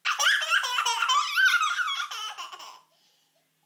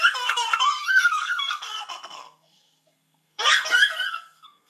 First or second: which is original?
first